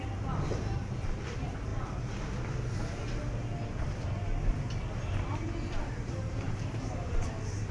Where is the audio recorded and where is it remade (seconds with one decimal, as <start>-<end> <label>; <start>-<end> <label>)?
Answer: 0.0-1.7 remade; 1.7-5.7 recorded; 5.7-7.7 remade